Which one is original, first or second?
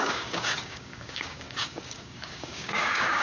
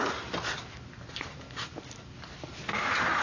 second